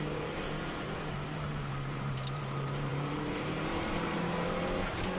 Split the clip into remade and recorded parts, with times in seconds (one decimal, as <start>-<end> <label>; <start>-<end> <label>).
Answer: 0.0-5.2 remade